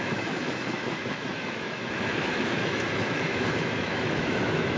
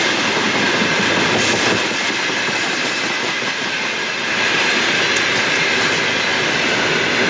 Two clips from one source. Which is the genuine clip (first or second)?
second